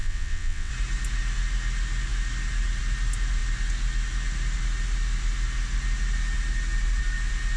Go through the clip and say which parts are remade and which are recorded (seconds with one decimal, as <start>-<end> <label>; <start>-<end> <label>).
0.0-0.7 remade; 0.7-7.6 recorded